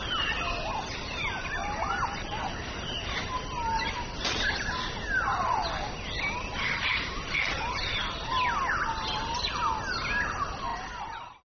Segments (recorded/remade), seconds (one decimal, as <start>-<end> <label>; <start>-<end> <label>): 0.0-1.6 recorded; 1.6-3.2 remade; 3.2-11.6 recorded